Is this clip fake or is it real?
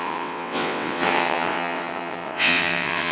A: fake